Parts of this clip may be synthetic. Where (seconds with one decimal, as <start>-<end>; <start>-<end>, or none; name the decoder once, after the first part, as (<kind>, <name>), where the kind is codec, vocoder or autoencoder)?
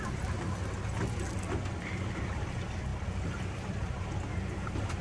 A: none